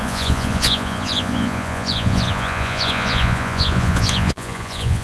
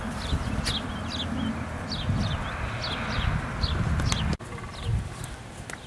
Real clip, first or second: second